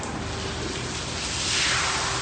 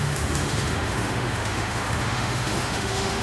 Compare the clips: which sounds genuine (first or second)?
first